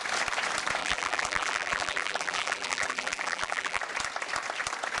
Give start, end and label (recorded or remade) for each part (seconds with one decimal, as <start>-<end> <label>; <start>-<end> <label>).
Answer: 0.0-0.8 recorded; 0.8-3.8 remade; 3.8-5.0 recorded